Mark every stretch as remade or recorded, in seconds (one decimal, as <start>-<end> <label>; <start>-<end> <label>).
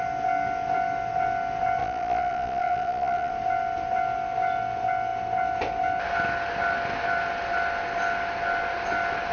0.0-1.8 recorded; 1.8-3.3 remade; 3.3-9.3 recorded